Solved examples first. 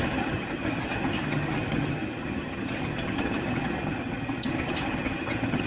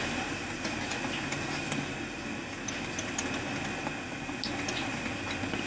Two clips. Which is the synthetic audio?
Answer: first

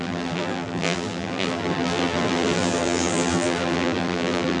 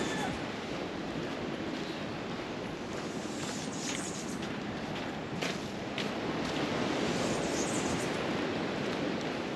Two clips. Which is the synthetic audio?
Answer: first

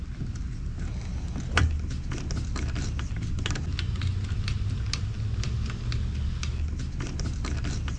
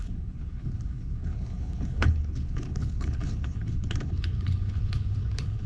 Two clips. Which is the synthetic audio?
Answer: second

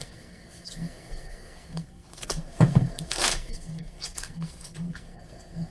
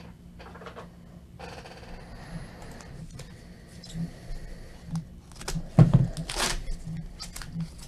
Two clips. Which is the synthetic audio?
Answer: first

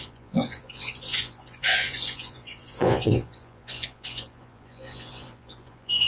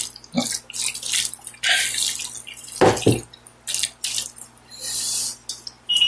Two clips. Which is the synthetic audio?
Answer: first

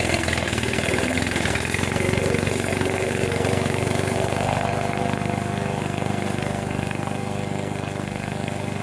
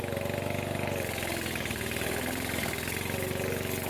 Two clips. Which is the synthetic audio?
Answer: first